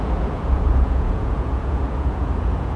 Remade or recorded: remade